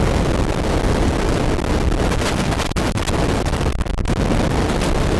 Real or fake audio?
real